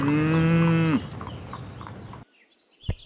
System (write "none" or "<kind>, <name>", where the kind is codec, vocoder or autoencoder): none